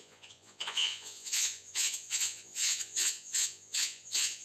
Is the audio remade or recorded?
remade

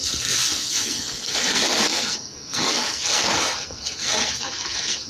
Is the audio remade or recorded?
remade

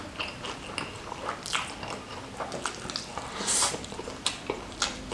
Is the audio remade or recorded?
recorded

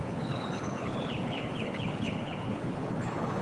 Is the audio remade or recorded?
remade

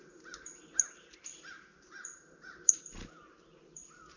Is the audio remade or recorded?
recorded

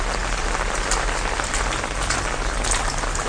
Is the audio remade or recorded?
recorded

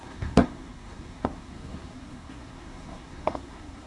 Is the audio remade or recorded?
remade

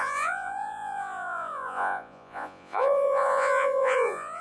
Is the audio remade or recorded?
remade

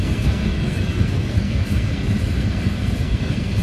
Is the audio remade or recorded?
remade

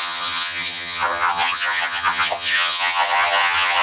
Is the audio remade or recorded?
remade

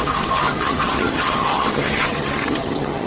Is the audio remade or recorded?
remade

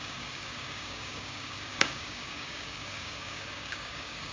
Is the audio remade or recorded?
remade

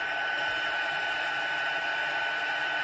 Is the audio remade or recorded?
recorded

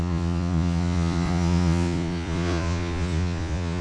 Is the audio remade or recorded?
remade